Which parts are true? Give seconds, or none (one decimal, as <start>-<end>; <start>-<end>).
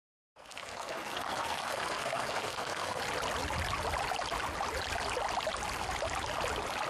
3.0-6.9